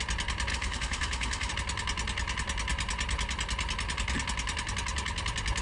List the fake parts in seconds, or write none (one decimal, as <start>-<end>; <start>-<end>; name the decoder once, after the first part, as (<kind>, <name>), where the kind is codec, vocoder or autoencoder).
0.5-1.5 (autoencoder, DAC-VAE)

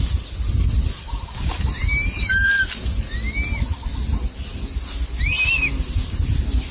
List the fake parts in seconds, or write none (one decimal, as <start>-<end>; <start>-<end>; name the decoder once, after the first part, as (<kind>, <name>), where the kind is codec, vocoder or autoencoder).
none

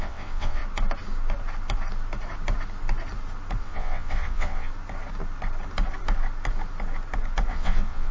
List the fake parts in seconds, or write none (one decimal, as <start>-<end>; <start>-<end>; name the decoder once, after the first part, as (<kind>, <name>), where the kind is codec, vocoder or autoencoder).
0.0-0.6 (vocoder, WaveNeXt); 3.6-4.7; 7.5-8.1

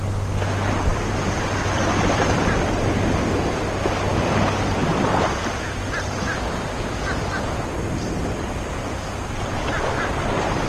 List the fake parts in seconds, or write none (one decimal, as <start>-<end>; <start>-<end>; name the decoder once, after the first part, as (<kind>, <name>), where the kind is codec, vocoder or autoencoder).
none

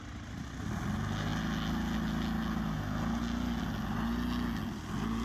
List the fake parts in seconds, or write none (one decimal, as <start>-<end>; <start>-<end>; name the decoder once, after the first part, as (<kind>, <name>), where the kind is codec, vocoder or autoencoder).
none

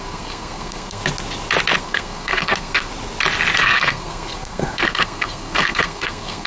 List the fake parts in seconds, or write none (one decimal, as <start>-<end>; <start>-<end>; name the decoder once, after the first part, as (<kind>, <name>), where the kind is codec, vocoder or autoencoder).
0.0-1.0 (codec, SNAC); 1.8-2.9; 3.6-6.5

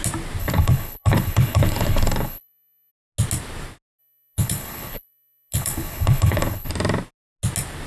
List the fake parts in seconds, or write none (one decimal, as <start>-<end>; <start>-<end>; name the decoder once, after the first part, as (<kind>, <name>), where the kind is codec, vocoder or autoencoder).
0.4-2.9 (codec, HILCodec); 4.0-6.7

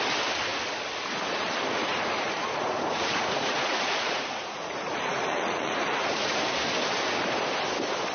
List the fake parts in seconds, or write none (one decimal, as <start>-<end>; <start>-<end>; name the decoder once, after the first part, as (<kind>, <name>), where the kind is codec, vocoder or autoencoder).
1.8-6.4 (vocoder, Vocos)